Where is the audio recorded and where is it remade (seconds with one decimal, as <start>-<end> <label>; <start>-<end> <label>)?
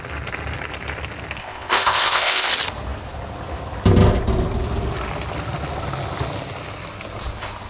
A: 0.0-1.4 recorded; 1.4-2.5 remade; 2.5-7.7 recorded